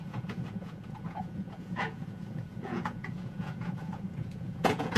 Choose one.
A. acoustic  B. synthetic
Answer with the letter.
B